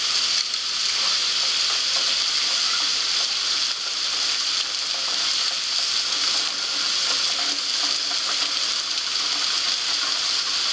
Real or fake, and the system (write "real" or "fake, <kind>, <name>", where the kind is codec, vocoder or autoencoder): real